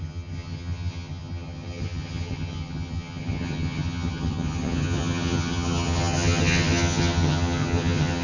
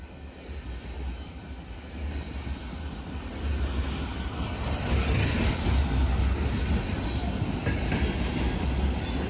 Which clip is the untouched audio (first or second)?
second